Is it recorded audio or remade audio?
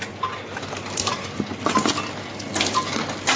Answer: recorded